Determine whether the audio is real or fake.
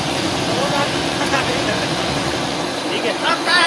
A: fake